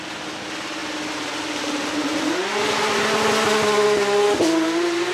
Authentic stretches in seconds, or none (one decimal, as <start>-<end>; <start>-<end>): 0.0-5.1